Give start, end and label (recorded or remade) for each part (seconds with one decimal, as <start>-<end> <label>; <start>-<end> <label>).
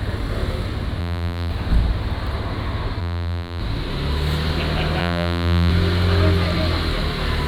0.0-1.0 recorded; 1.0-1.5 remade; 1.5-3.0 recorded; 3.0-3.6 remade; 3.6-5.0 recorded; 5.0-5.7 remade; 5.7-7.5 recorded